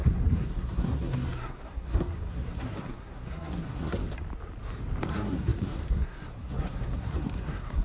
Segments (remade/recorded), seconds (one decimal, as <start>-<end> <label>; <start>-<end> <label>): 0.0-4.0 remade; 4.0-5.1 recorded; 5.1-7.8 remade